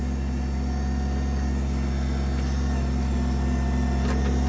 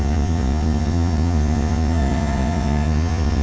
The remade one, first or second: second